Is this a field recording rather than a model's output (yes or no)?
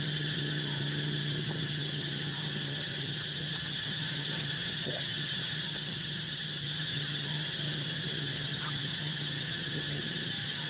no